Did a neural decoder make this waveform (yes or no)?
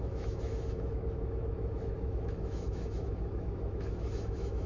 yes